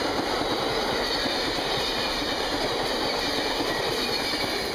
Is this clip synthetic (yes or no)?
no